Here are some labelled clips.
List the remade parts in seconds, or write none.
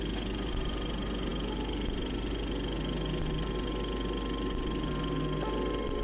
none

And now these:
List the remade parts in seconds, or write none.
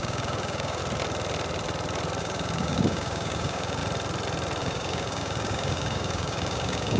0.0-0.8 (codec, DAC); 2.2-3.8; 4.6-7.0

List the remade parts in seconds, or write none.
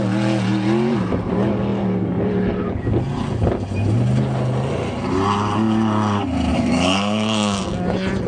6.5-7.6 (codec, DAC)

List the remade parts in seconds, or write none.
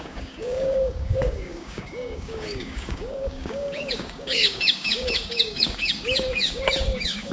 0.0-7.3 (codec, DAC)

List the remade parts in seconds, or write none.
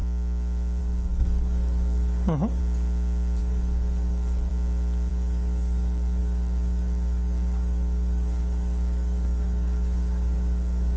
0.8-2.6 (codec, DAC); 3.4-4.5; 5.1-11.0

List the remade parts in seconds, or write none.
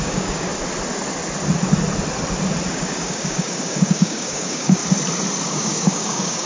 0.0-0.5 (codec, DAC); 2.7-4.8; 5.4-6.5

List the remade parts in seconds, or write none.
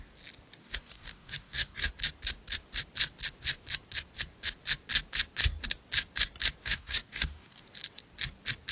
0.6-1.9 (codec, DAC); 6.6-7.6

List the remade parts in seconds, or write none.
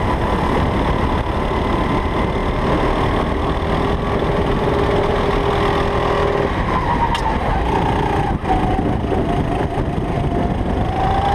none